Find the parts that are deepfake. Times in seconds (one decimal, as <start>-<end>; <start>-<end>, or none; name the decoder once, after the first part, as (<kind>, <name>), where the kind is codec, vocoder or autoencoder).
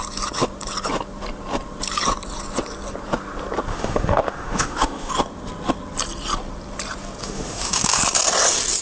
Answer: 3.7-5.1 (autoencoder, DAC-VAE); 7.2-8.0